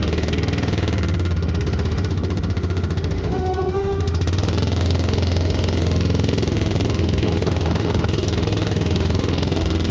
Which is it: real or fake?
fake